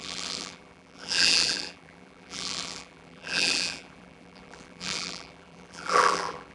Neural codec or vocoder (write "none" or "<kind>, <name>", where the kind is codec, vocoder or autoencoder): vocoder, BigVGAN v2